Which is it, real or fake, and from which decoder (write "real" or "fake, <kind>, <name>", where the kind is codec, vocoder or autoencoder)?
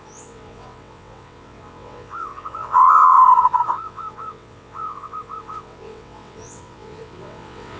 fake, vocoder, WaveNeXt